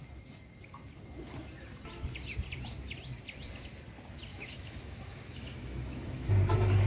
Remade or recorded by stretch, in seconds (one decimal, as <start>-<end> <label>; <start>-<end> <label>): 0.0-4.3 recorded; 4.3-6.3 remade; 6.3-6.9 recorded